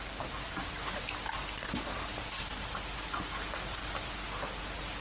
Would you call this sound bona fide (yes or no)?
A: yes